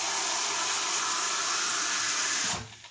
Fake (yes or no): no